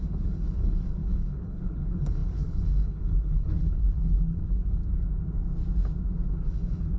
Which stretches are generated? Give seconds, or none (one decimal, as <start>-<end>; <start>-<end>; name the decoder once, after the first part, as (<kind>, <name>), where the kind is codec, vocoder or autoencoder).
0.0-4.8 (codec, HILCodec); 6.3-7.0